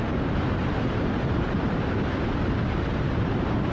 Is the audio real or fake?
fake